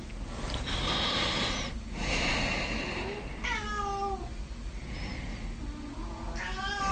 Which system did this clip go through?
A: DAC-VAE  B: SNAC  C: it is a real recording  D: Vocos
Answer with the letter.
C